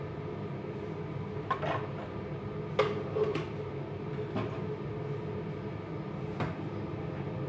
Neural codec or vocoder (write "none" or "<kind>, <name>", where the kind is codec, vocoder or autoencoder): none